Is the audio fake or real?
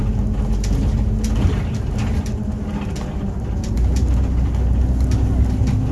real